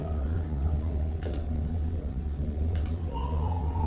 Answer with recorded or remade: remade